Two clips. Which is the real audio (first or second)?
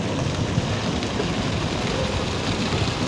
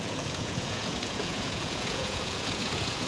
first